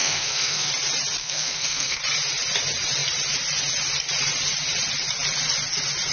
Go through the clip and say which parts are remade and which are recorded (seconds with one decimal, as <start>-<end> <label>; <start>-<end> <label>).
0.0-0.7 remade; 0.7-1.2 recorded; 1.2-2.0 remade; 2.0-6.1 recorded